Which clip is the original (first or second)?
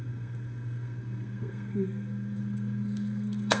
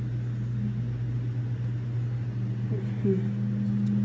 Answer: second